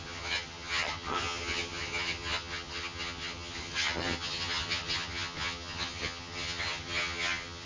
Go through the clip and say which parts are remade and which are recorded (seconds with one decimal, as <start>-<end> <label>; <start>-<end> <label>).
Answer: 0.0-7.7 remade